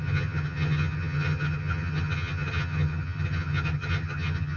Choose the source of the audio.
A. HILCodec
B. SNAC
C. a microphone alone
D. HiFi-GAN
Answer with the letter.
D